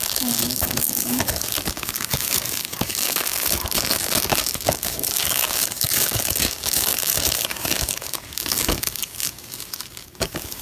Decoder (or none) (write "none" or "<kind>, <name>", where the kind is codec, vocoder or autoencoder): codec, DAC